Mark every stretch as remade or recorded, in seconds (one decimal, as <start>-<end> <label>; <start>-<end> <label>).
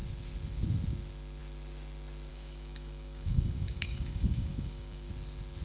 0.0-2.3 recorded; 2.3-5.1 remade; 5.1-5.6 recorded